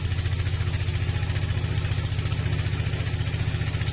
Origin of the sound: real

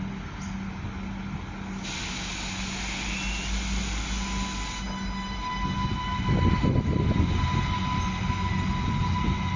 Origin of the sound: real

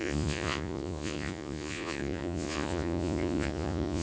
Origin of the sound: fake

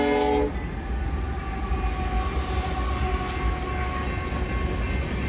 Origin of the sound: real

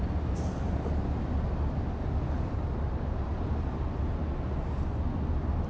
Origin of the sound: real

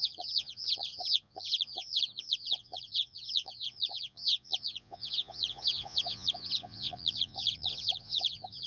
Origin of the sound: fake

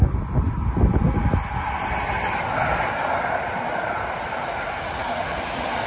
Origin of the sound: real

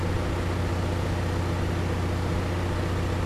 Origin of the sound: real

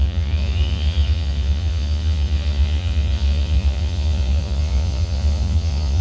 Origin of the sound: fake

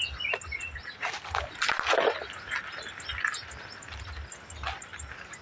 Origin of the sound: real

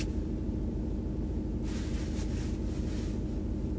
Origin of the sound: real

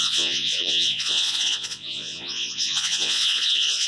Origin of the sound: fake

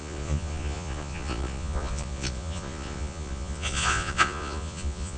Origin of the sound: fake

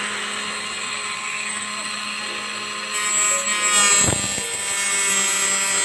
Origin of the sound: real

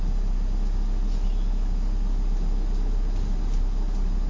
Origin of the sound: real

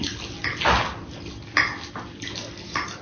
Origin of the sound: real